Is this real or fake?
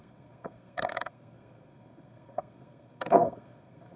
fake